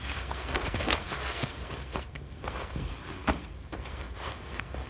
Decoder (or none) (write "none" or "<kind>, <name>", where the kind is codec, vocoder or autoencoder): codec, SNAC